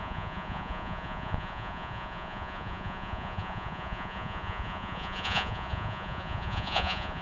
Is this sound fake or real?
fake